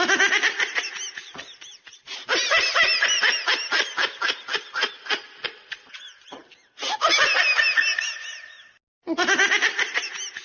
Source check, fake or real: real